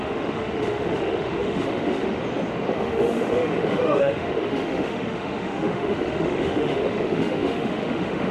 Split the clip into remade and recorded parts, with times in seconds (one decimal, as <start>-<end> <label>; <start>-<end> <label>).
0.0-2.2 remade; 2.2-2.7 recorded; 2.7-8.3 remade